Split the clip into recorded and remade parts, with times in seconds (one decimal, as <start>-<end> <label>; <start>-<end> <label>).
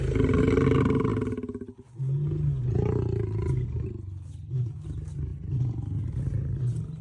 0.0-7.0 recorded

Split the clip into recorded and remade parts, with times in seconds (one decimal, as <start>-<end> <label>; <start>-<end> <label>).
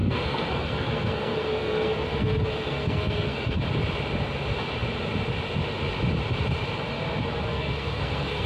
0.0-3.6 remade; 3.6-7.5 recorded; 7.5-8.5 remade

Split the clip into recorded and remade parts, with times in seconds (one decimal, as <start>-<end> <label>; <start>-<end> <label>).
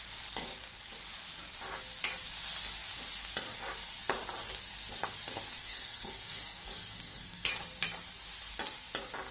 0.0-5.6 recorded; 5.6-7.5 remade; 7.5-9.3 recorded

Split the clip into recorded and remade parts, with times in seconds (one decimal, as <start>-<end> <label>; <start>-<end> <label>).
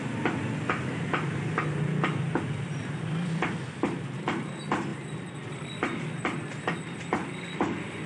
0.0-8.1 recorded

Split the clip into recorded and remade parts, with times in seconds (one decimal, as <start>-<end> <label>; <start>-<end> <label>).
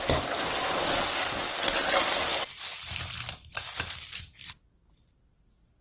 0.0-5.8 recorded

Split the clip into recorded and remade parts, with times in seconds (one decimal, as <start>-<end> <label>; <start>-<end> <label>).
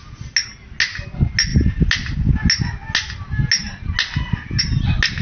0.0-5.2 recorded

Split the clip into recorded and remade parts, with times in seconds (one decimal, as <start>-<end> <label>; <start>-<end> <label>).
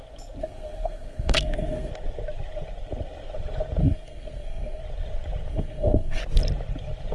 0.0-0.4 recorded; 0.4-1.9 remade; 1.9-3.8 recorded; 3.8-4.8 remade; 4.8-5.5 recorded; 5.5-6.2 remade; 6.2-7.1 recorded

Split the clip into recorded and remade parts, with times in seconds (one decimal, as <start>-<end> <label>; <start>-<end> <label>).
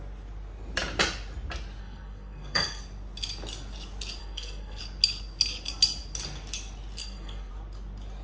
0.0-1.8 recorded; 1.8-2.8 remade; 2.8-4.2 recorded; 4.2-4.8 remade; 4.8-7.0 recorded; 7.0-7.5 remade; 7.5-8.2 recorded